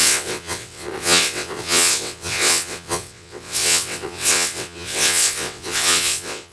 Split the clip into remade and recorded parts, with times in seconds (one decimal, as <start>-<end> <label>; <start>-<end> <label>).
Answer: 0.0-6.5 remade